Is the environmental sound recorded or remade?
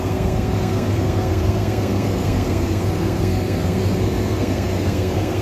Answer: remade